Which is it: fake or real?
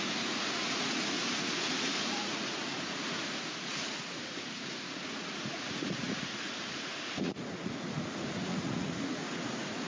fake